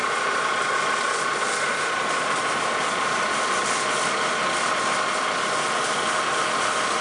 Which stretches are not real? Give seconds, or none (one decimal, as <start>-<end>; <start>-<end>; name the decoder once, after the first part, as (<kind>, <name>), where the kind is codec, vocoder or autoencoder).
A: 0.0-0.5 (vocoder, BigVGAN v2); 1.7-3.0